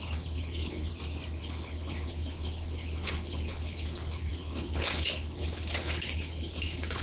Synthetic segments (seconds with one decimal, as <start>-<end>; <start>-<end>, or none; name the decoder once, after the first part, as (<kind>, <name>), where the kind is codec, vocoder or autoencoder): 0.0-0.9 (codec, HILCodec); 1.4-7.0